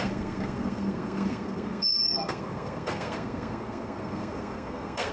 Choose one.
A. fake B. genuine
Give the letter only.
A